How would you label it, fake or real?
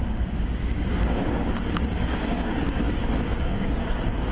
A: fake